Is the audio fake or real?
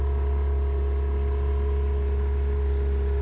real